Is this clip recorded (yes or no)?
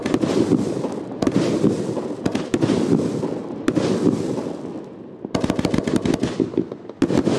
yes